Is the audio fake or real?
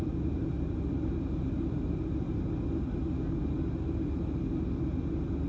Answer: real